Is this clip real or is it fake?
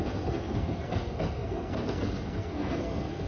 fake